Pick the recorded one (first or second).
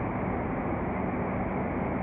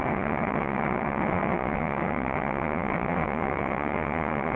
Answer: first